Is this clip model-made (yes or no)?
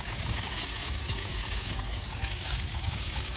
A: yes